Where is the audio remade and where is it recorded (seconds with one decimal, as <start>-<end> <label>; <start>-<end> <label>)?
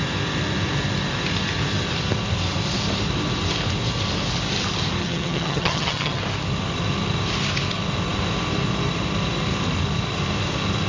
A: 0.0-5.0 recorded; 5.0-6.2 remade; 6.2-10.9 recorded